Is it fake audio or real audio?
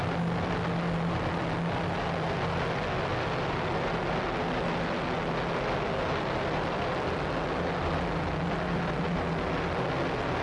real